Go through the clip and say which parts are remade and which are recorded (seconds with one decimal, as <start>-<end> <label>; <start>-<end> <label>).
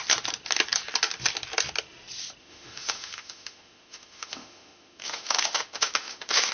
0.0-2.4 recorded; 2.4-6.5 remade